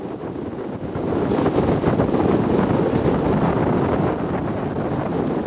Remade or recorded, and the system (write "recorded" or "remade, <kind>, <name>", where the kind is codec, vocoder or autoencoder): recorded